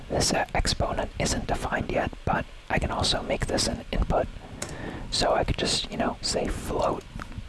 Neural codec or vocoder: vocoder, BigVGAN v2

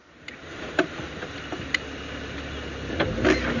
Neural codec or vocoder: none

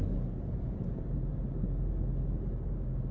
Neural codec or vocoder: none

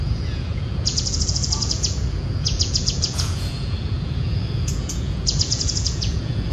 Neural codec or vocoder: vocoder, Vocos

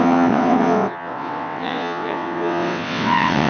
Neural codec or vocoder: vocoder, WaveNeXt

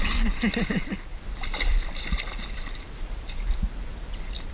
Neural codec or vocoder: vocoder, BigVGAN v2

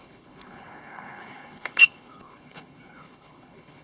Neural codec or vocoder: codec, HILCodec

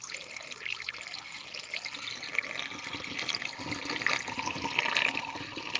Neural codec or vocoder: none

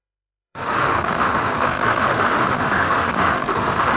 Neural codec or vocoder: autoencoder, DAC-VAE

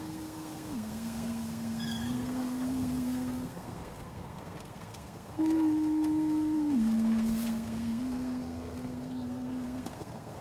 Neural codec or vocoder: codec, SNAC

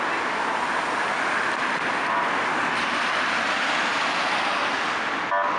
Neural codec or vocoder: none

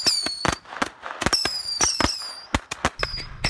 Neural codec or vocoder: none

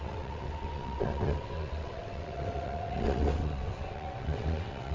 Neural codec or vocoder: vocoder, WaveNeXt